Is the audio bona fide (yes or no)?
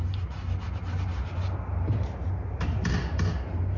yes